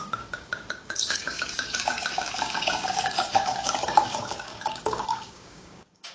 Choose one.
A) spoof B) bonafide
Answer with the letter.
A